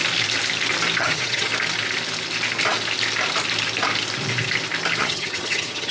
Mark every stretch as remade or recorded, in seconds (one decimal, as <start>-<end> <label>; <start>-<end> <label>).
0.0-1.0 recorded; 1.0-1.5 remade; 1.5-5.0 recorded; 5.0-5.9 remade